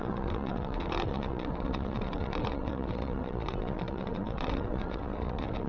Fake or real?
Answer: fake